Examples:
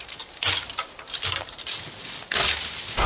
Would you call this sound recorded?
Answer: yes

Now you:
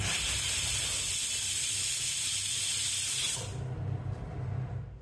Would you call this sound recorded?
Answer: yes